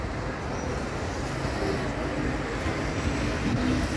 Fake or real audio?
real